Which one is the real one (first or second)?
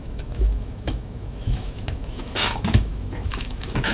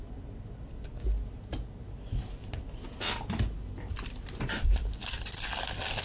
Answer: second